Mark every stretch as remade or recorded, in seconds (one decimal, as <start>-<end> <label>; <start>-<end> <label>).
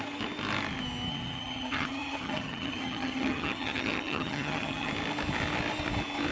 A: 0.0-1.1 recorded; 1.1-4.9 remade; 4.9-6.3 recorded